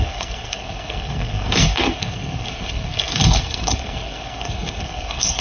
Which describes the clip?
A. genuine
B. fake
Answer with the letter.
B